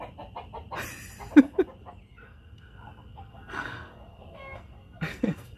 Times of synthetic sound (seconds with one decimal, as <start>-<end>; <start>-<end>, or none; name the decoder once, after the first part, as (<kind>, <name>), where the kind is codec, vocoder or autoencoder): 2.1-5.6 (codec, SNAC)